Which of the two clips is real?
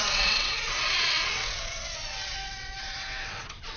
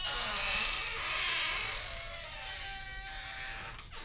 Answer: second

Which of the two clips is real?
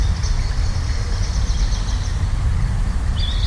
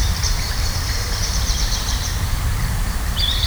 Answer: first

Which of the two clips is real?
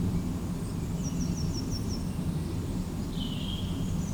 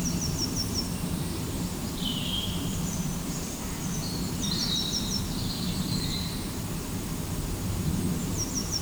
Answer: first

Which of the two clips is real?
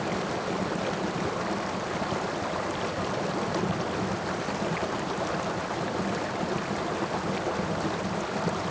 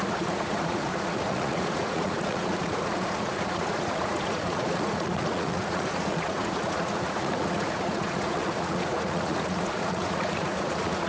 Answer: first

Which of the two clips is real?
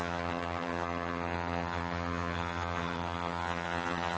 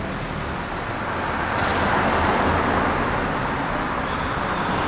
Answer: second